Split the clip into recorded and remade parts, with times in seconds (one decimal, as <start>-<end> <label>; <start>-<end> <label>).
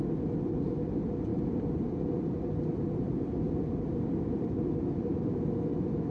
0.0-6.1 recorded